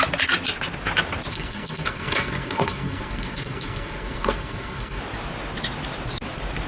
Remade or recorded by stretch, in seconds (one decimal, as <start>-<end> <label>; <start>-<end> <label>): 0.0-1.3 recorded; 1.3-5.0 remade; 5.0-6.7 recorded

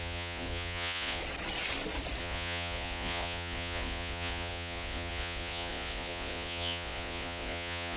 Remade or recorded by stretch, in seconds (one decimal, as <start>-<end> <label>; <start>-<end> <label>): 0.0-1.2 remade; 1.2-2.2 recorded; 2.2-8.0 remade